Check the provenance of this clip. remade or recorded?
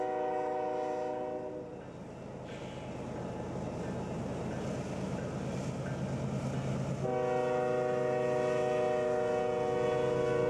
recorded